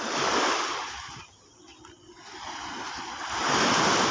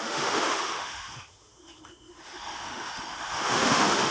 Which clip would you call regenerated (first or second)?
second